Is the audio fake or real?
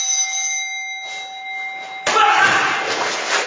real